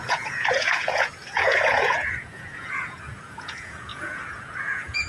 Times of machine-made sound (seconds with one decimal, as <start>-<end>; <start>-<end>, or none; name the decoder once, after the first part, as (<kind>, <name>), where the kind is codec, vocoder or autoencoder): 0.0-5.1 (vocoder, Vocos)